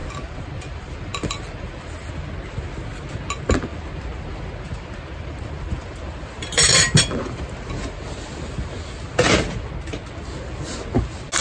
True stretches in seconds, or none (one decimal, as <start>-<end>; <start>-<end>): 2.1-3.7; 7.7-11.4